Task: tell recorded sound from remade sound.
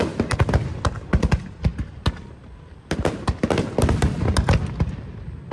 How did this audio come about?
recorded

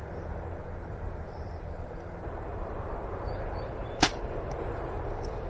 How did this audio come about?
remade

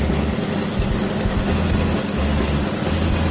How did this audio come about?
recorded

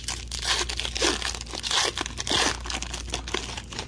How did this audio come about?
recorded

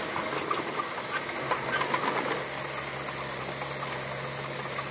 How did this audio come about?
recorded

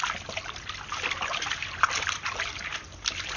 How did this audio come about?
recorded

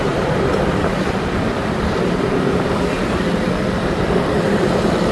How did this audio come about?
remade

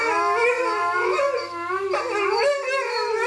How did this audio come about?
recorded